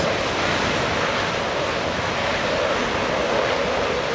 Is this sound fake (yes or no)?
no